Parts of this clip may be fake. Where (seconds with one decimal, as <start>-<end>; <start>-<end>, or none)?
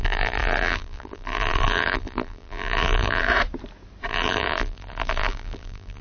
0.0-3.3; 4.1-6.0